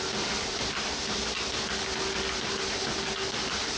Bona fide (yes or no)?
yes